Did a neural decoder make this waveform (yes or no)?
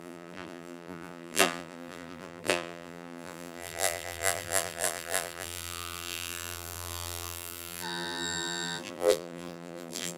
yes